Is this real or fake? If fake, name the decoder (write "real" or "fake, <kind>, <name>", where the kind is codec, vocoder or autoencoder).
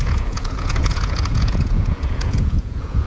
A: fake, vocoder, Vocos